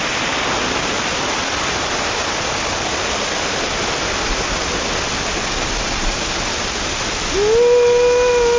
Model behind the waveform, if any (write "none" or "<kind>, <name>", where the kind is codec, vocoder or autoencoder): none